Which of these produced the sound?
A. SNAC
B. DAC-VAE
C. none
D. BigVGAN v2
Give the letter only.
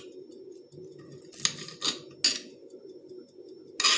C